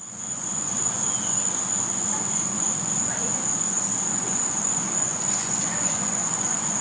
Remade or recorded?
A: remade